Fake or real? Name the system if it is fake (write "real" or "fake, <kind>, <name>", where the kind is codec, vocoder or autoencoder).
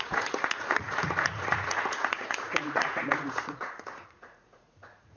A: fake, vocoder, Vocos